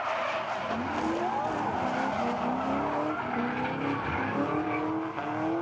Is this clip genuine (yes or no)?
yes